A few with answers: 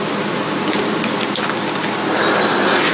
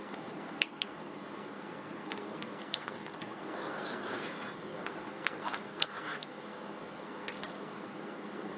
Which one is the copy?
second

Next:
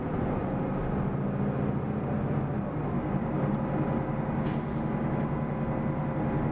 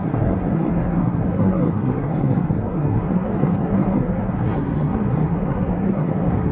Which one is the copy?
second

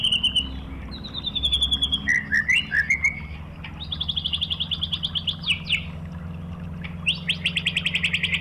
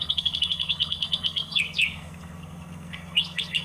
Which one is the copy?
second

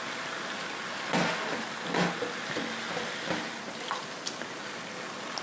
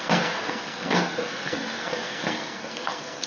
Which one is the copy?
second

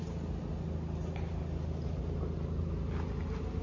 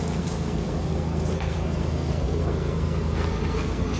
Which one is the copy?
second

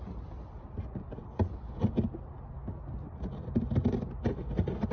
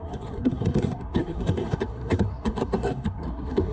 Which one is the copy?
second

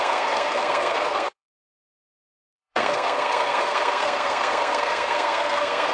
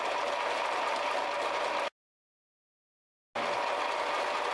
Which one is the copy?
first